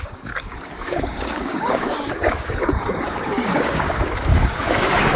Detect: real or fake fake